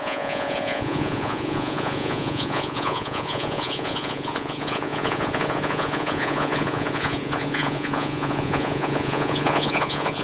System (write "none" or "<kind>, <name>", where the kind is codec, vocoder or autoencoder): vocoder, Vocos